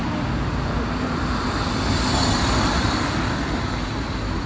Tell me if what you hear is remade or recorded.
recorded